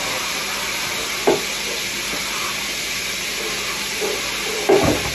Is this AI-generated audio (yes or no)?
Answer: no